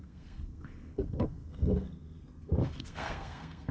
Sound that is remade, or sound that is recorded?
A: remade